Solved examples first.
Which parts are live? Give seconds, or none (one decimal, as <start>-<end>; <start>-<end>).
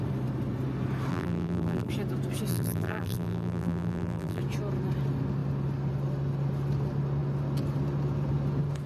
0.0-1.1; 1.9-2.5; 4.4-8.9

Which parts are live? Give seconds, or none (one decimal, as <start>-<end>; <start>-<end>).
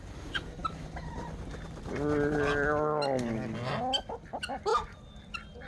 0.0-4.7; 5.3-5.7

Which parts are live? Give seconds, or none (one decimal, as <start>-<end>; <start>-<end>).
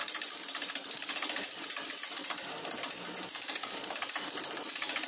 0.0-3.1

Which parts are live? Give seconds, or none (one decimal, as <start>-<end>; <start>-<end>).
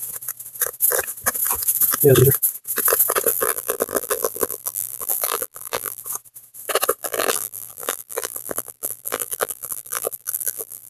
0.0-3.3; 6.0-7.0